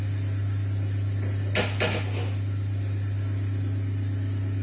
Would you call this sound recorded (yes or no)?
yes